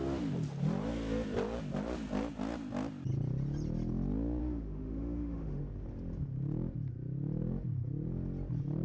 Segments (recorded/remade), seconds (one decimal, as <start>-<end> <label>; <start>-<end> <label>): 0.0-4.4 recorded; 4.4-5.6 remade; 5.6-8.8 recorded